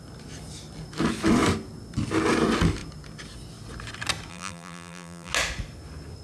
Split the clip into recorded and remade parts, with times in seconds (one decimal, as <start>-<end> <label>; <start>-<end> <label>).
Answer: 0.0-4.3 recorded; 4.3-5.3 remade; 5.3-6.2 recorded